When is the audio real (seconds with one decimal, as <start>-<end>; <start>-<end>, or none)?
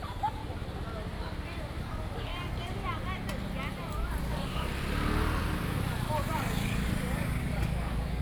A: 0.4-1.8; 2.3-4.2; 4.7-7.1